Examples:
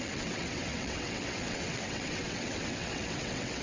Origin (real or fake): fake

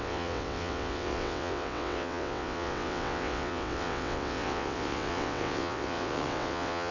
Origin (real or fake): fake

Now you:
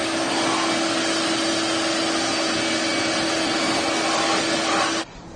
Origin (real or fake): real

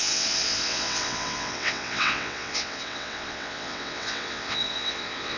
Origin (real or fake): fake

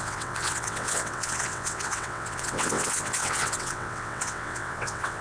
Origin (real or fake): fake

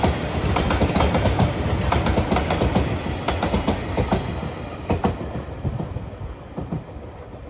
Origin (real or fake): real